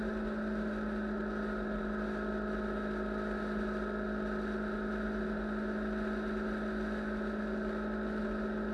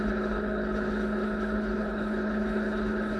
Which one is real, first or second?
first